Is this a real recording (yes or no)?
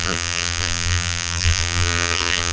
no